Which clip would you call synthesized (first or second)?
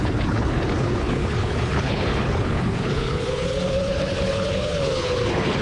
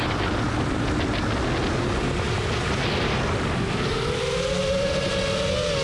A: first